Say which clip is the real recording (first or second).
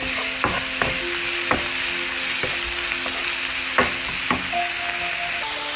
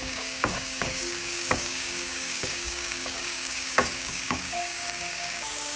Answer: first